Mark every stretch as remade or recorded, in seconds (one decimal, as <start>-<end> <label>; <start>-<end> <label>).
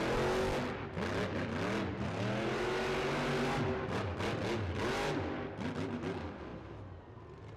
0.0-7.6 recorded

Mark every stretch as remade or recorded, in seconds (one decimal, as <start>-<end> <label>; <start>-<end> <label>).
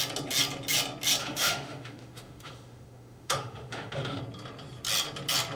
0.0-1.2 recorded; 1.2-4.2 remade; 4.2-5.6 recorded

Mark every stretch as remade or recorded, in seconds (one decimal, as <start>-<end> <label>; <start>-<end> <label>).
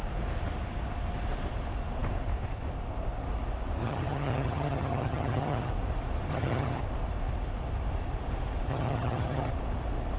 0.0-3.8 recorded; 3.8-5.7 remade; 5.7-6.3 recorded; 6.3-6.8 remade; 6.8-8.7 recorded; 8.7-9.5 remade; 9.5-10.2 recorded